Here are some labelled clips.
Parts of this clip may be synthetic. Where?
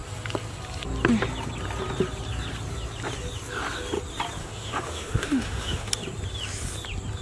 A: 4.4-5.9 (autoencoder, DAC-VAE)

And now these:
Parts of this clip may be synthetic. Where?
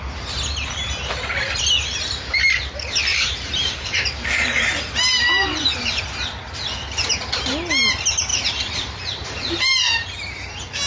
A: 3.1-6.0 (vocoder, BigVGAN v2); 8.3-9.6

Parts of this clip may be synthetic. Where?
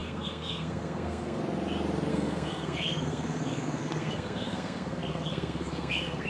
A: 0.0-1.4 (codec, SNAC); 2.1-6.3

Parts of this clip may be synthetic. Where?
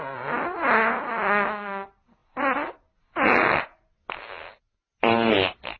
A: none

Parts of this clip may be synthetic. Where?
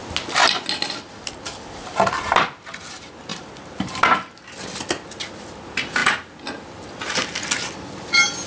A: none